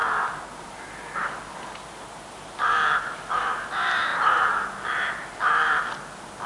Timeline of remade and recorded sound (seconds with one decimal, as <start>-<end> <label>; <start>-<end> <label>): 0.0-6.5 recorded